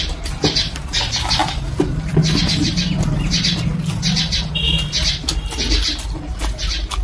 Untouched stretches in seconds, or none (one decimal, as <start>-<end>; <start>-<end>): 0.0-7.0